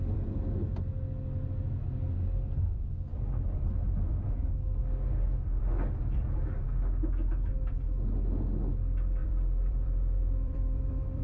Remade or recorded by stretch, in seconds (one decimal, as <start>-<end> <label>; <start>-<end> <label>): 0.0-9.2 recorded; 9.2-11.2 remade